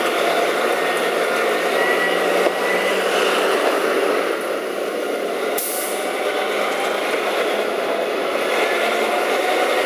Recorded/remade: recorded